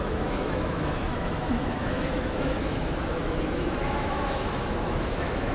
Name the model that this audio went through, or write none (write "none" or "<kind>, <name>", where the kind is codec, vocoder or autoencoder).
autoencoder, DAC-VAE